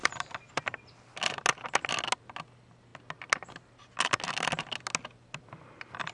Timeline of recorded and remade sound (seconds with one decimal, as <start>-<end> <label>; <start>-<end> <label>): 0.0-6.1 recorded